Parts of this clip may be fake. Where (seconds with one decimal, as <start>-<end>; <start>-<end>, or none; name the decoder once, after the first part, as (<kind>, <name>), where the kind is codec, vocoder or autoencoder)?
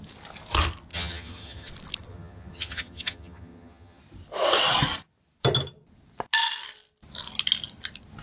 0.9-1.7 (vocoder, HiFi-GAN); 2.1-4.0